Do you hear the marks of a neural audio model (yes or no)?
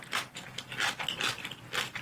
no